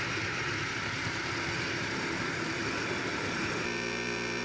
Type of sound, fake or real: fake